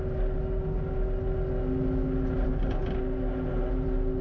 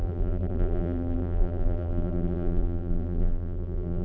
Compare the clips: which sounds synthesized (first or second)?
second